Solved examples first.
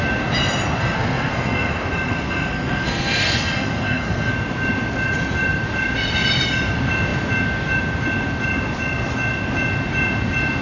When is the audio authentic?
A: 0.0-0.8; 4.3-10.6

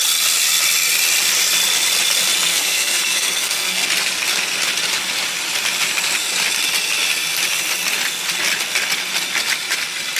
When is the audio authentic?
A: 0.0-2.5; 3.9-10.2

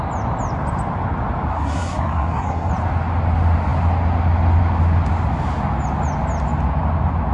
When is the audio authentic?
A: 0.0-1.5; 2.7-7.3

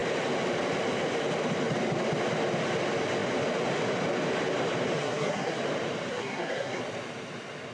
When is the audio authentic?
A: 0.0-5.0; 5.6-6.1; 6.8-7.7